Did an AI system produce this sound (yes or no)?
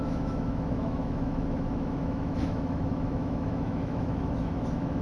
yes